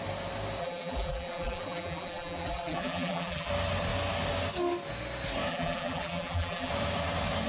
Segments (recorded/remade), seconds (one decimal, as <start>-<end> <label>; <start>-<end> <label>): 0.0-0.6 recorded; 0.6-3.5 remade; 3.5-5.5 recorded; 5.5-6.7 remade; 6.7-7.5 recorded